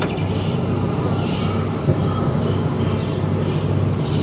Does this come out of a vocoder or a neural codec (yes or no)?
no